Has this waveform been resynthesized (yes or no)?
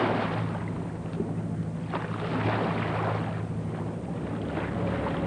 no